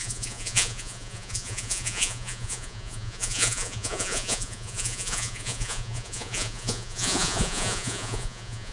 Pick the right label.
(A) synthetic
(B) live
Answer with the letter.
A